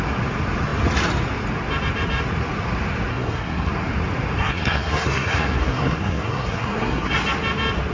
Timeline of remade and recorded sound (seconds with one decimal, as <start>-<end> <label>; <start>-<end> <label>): 0.0-3.1 recorded; 3.1-3.7 remade; 3.7-4.4 recorded; 4.4-7.1 remade; 7.1-7.9 recorded